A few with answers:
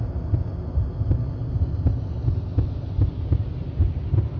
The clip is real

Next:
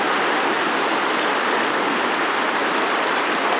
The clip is real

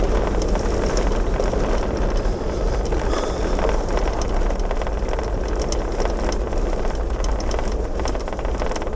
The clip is real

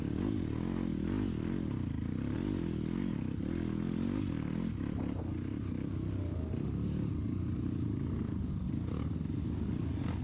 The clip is real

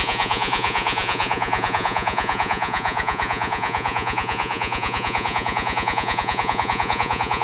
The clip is fake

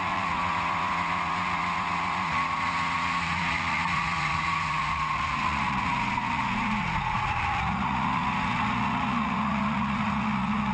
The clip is fake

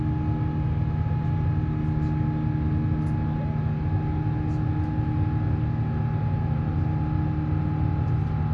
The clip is real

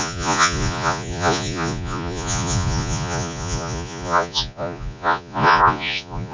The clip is fake